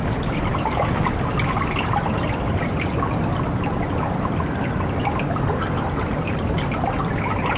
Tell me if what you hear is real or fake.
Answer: real